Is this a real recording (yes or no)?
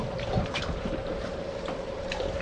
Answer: no